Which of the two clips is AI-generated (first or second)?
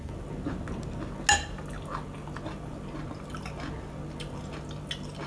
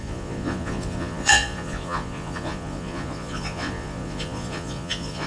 second